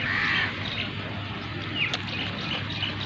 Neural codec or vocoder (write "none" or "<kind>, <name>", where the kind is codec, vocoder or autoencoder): none